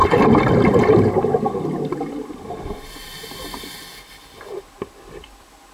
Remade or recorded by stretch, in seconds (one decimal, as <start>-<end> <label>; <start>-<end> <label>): 0.0-5.7 recorded